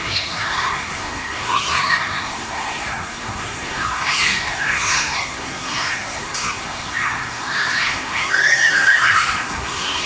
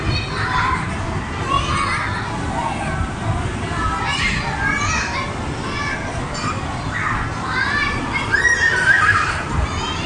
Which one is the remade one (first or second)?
first